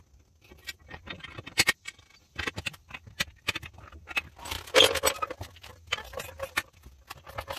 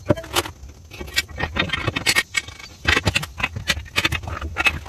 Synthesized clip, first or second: first